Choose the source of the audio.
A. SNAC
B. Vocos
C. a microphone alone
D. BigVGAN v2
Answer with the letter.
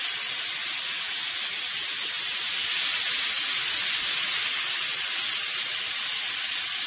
C